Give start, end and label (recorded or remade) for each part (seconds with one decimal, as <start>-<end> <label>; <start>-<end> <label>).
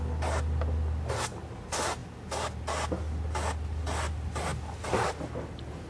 0.0-5.9 recorded